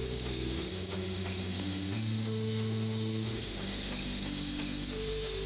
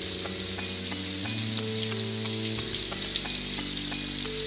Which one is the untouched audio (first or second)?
second